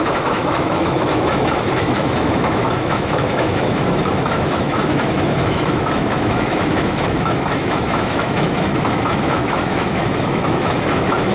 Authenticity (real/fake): fake